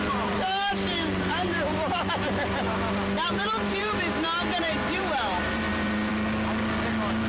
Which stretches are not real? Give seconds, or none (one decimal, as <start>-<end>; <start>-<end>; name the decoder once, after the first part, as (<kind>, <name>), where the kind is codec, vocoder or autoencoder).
0.0-6.1 (vocoder, BigVGAN v2)